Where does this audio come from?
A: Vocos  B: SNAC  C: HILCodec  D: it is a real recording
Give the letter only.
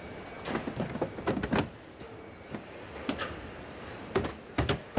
D